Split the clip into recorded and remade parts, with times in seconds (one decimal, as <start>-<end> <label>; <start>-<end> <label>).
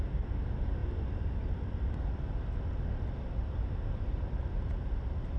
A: 0.0-5.4 recorded